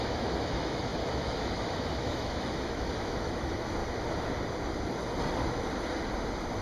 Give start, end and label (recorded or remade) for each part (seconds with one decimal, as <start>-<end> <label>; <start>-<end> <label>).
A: 0.0-3.8 remade; 3.8-6.6 recorded